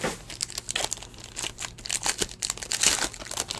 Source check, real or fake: real